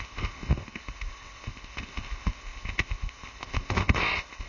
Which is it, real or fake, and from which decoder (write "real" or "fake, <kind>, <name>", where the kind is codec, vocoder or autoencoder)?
fake, codec, ZipCodec